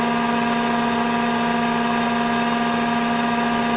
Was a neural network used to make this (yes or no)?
no